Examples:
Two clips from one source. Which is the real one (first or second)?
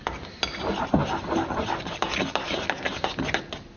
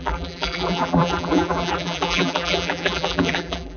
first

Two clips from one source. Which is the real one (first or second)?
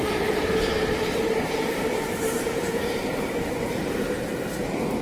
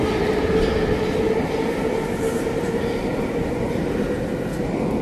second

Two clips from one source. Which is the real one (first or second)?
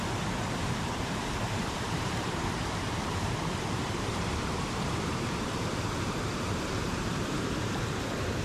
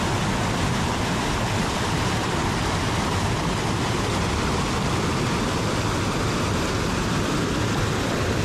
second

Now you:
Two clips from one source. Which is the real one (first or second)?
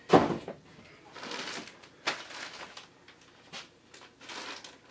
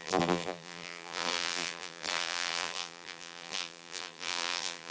first